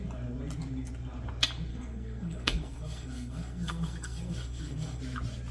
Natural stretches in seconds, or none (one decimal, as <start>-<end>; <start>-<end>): 0.0-1.7; 5.0-5.5